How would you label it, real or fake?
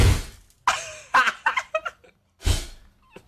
real